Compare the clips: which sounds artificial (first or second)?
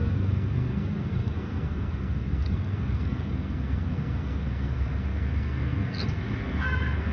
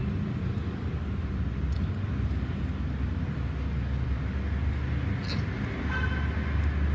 first